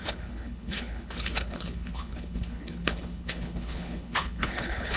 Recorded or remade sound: remade